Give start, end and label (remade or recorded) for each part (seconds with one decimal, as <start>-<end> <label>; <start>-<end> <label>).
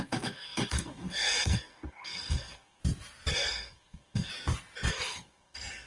0.0-2.8 remade; 2.8-3.3 recorded; 3.3-4.3 remade; 4.3-4.9 recorded; 4.9-5.9 remade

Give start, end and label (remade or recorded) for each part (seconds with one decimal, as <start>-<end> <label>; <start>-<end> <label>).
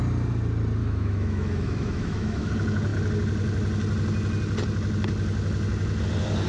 0.0-0.8 recorded; 0.8-2.5 remade; 2.5-6.5 recorded